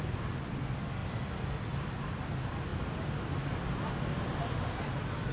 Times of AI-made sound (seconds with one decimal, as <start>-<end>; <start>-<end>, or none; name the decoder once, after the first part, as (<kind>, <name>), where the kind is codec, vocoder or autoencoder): none